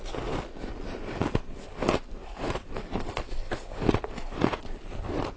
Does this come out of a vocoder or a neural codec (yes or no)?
no